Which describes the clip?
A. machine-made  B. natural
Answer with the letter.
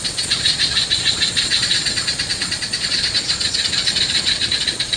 A